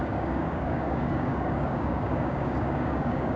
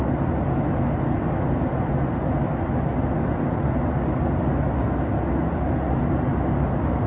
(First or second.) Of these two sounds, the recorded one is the second